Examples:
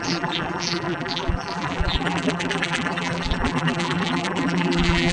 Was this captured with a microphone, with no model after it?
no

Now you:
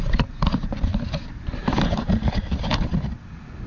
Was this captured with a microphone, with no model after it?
no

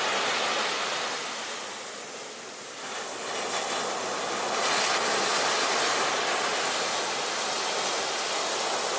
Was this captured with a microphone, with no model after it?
yes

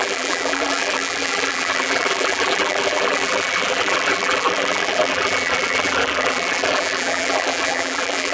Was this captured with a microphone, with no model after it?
no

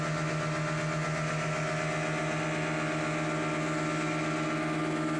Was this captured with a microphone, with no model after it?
yes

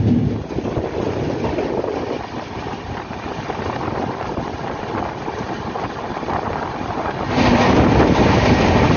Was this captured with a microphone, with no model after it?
yes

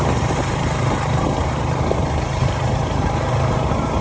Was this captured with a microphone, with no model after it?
no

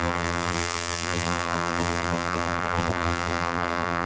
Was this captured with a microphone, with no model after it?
no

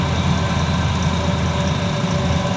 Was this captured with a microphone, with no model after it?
yes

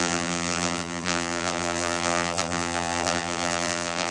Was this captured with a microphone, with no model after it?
no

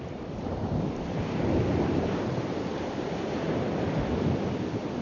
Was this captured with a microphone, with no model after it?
no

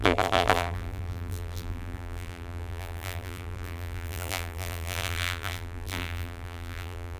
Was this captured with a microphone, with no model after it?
no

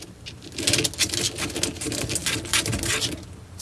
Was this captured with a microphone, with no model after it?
yes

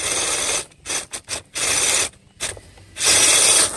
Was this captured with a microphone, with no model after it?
yes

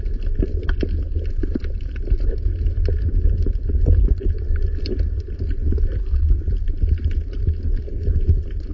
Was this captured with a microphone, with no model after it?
yes